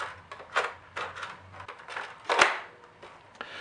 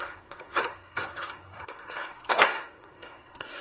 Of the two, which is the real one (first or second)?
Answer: first